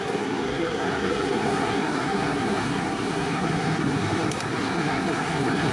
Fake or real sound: fake